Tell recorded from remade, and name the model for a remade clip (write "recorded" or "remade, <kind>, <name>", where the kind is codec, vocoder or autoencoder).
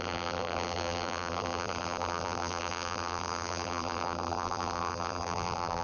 remade, vocoder, BigVGAN v2